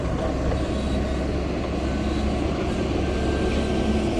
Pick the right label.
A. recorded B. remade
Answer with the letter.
A